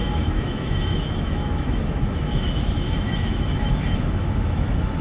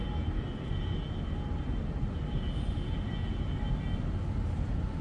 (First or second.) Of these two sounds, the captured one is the second